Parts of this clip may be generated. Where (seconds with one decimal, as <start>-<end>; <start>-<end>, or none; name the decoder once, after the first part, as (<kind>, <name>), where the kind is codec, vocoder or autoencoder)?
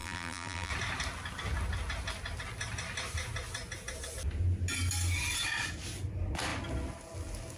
0.0-0.7 (vocoder, BigVGAN v2)